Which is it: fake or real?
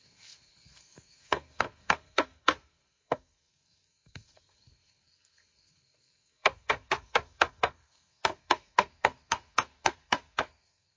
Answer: fake